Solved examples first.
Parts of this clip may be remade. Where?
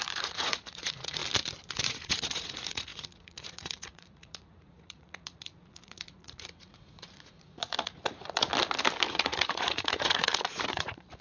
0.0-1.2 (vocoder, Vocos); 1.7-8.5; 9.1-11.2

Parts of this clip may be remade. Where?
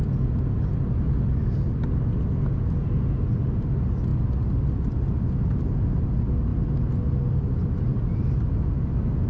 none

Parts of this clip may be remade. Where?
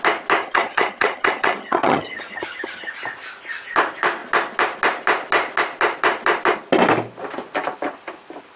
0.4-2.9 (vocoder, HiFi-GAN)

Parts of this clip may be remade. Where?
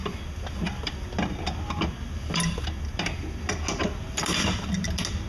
none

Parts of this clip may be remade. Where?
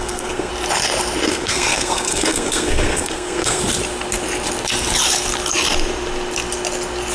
0.0-0.5 (codec, SNAC); 1.3-3.6